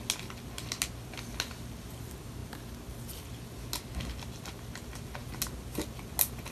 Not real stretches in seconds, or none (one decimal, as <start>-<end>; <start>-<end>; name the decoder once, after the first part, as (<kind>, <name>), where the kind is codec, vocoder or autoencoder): none